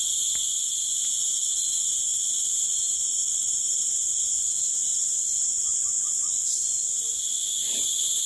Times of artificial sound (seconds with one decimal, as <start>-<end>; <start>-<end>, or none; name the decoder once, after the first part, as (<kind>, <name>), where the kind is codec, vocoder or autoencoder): none